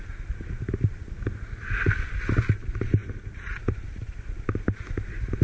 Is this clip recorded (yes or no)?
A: yes